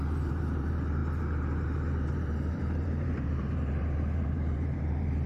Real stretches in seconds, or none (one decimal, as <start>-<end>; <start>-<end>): none